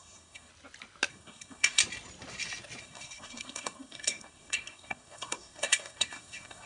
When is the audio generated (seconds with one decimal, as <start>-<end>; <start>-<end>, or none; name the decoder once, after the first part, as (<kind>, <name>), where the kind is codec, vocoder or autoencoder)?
0.0-0.5 (codec, SNAC); 1.1-1.8; 2.8-6.7